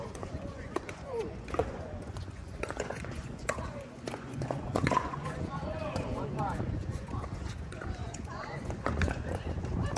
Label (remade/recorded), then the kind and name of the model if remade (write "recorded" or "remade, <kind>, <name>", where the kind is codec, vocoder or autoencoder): remade, vocoder, Vocos